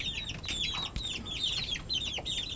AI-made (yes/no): no